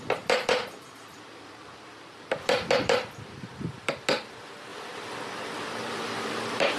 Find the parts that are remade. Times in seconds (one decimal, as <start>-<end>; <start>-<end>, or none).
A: 1.1-3.5; 4.7-6.8